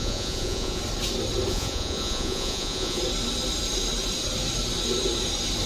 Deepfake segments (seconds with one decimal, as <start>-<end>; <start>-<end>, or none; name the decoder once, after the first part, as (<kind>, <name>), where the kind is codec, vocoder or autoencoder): 0.0-0.8 (vocoder, Vocos); 1.5-3.0